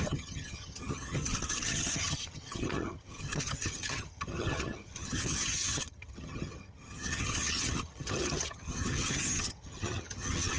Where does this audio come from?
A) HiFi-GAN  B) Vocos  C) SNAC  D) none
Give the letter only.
A